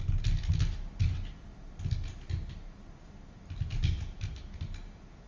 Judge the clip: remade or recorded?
recorded